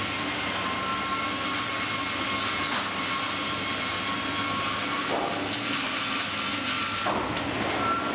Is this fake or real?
real